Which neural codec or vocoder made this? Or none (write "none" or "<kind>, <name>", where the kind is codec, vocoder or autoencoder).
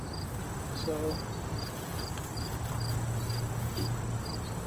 none